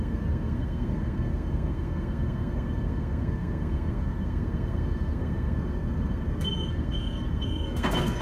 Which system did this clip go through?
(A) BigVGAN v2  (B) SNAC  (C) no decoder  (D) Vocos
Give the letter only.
B